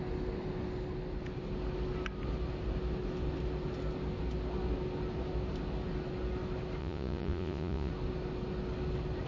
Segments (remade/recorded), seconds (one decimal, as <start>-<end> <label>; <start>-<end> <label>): 0.0-6.8 recorded; 6.8-7.9 remade; 7.9-9.3 recorded